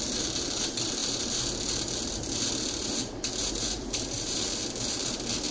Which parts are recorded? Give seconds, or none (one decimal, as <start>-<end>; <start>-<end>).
none